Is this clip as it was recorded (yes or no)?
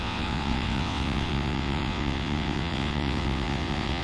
no